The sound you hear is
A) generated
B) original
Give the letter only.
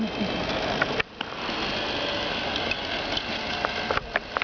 B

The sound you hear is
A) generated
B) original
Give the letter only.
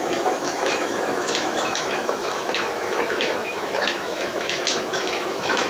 A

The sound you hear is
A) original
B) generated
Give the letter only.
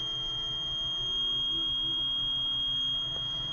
B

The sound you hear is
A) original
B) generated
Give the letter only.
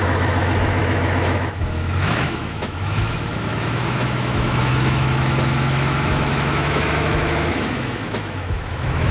B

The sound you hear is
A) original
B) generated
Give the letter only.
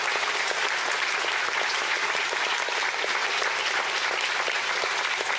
A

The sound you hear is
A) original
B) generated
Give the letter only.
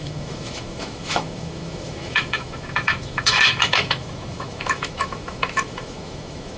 B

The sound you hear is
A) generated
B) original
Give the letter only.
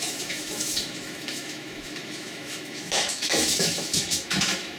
A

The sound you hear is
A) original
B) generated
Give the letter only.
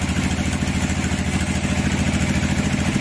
A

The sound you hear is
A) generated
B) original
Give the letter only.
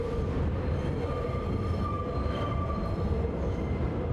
B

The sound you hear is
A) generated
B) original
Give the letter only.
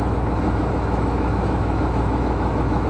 A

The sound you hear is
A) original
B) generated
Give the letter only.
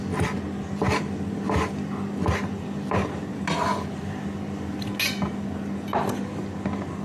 A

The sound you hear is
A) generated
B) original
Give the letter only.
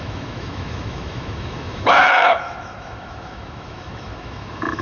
A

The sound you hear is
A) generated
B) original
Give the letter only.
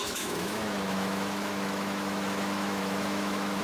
A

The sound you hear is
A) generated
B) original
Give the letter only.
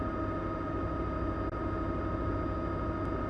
B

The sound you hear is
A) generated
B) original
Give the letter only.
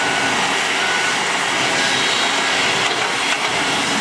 B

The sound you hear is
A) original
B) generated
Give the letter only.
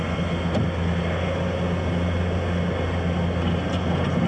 A